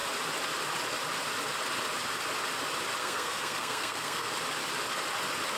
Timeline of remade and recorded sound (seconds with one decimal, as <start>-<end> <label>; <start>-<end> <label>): 0.0-3.0 recorded; 3.0-4.3 remade; 4.3-5.6 recorded